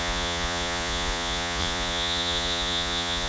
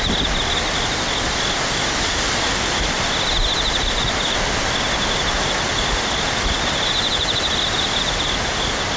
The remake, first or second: first